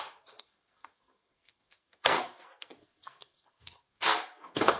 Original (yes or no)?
no